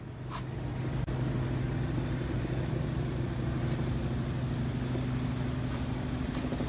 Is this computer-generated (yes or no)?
no